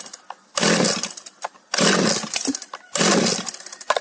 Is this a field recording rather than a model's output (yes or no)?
yes